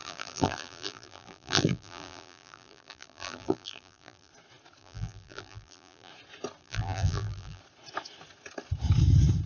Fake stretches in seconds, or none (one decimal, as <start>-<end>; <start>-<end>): 0.0-4.3; 4.8-6.1; 6.6-7.6